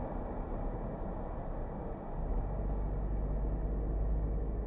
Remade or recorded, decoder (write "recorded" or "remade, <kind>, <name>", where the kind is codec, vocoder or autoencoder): recorded